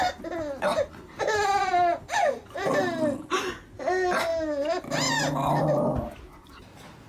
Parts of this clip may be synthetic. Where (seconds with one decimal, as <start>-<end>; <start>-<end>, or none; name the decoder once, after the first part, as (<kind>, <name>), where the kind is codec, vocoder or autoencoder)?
none